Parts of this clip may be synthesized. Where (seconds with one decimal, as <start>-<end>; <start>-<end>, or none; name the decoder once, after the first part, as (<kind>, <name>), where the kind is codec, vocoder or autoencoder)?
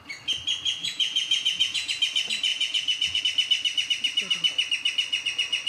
0.8-1.9 (vocoder, Vocos); 2.5-3.2